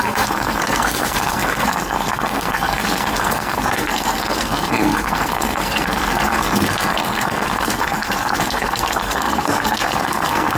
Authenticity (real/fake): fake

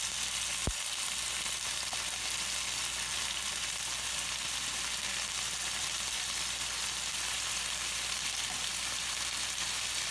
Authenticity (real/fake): real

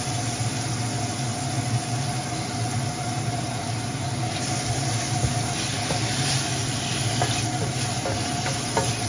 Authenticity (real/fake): real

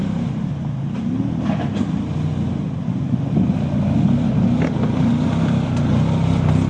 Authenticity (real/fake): real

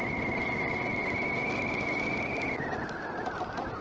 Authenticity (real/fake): real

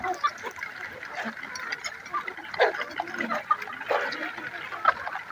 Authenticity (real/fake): real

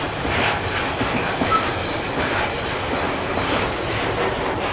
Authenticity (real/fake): real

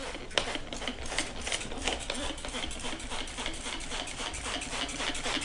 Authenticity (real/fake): real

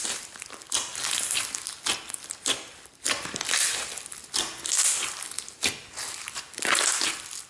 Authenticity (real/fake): real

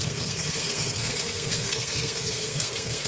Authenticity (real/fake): fake